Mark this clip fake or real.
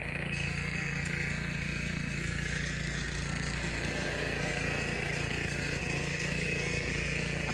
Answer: fake